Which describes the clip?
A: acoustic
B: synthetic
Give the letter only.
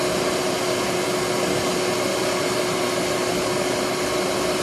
A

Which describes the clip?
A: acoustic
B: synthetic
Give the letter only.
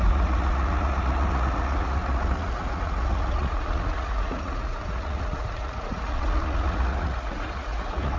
B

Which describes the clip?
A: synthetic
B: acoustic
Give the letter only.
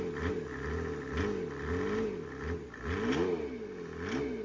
B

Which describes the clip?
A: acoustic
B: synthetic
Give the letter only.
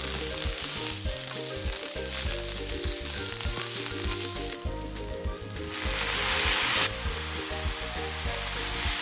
A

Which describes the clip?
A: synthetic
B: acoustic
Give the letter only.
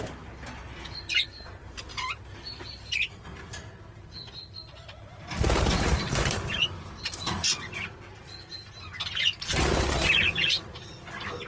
B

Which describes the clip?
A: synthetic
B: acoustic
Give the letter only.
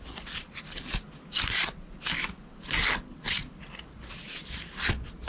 B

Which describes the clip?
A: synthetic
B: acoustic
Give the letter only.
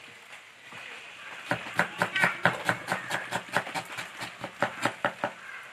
B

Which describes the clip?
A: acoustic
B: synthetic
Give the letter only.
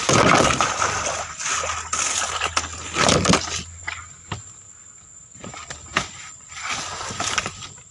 A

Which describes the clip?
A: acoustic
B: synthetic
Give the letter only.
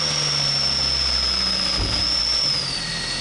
A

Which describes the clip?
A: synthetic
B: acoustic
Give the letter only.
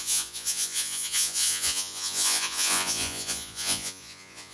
A